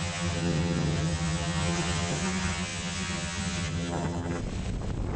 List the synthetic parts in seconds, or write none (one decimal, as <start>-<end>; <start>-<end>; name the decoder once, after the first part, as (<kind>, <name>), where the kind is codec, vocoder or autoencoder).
0.0-4.4 (vocoder, HiFi-GAN)